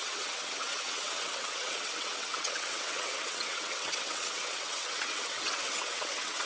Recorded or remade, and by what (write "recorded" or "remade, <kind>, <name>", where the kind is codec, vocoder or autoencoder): remade, vocoder, WaveNeXt